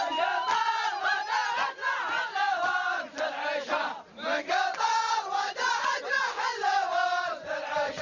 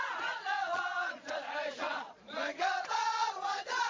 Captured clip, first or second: first